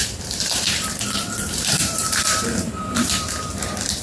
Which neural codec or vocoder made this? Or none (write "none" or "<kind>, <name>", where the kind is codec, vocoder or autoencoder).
vocoder, BigVGAN v2